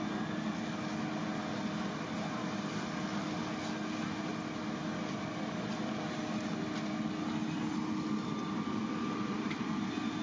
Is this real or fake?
real